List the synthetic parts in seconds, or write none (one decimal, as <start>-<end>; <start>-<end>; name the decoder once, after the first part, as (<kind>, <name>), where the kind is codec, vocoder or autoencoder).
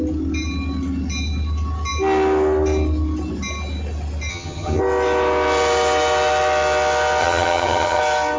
4.3-4.8 (vocoder, HiFi-GAN); 7.2-8.0